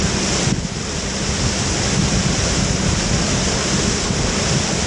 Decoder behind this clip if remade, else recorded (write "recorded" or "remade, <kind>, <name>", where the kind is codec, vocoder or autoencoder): remade, vocoder, BigVGAN v2